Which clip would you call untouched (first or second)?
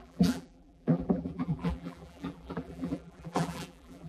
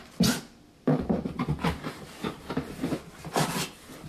second